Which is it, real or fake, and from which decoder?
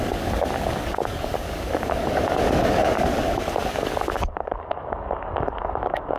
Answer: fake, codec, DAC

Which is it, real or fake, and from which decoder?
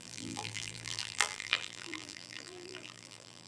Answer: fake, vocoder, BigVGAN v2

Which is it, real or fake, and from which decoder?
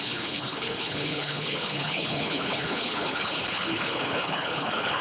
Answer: fake, codec, HILCodec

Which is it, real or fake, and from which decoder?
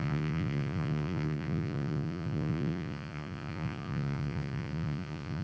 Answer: fake, vocoder, Vocos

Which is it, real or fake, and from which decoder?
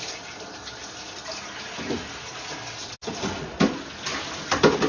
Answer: real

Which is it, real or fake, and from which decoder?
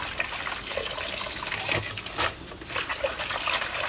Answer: real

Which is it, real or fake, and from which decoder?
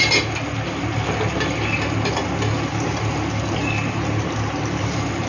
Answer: real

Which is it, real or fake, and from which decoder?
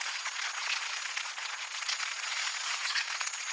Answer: fake, vocoder, Vocos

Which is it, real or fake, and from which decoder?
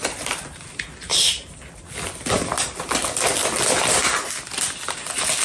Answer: real